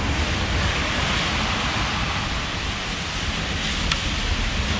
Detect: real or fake real